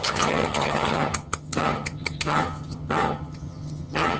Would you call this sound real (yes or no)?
no